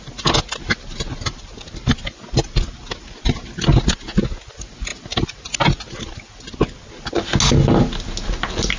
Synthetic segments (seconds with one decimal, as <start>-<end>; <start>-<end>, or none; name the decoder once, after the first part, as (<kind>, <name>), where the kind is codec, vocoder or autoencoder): none

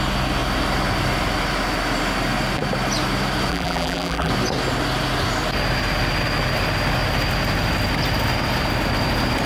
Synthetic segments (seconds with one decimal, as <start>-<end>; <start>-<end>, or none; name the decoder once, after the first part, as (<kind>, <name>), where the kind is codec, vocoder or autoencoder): 3.5-4.3 (vocoder, BigVGAN v2)

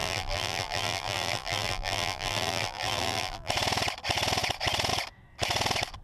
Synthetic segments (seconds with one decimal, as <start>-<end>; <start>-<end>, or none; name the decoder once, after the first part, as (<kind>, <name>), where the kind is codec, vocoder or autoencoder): 0.0-3.5 (vocoder, BigVGAN v2)

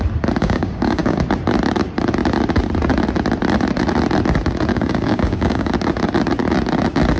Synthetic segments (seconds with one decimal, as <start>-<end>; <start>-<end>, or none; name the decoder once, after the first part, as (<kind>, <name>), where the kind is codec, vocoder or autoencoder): 0.4-1.2 (codec, DAC); 4.7-5.7

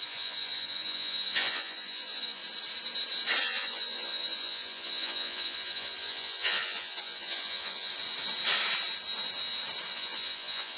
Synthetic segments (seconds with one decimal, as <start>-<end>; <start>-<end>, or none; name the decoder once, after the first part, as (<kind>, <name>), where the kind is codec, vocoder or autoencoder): 0.0-2.4 (vocoder, Vocos); 3.4-7.9; 9.9-10.8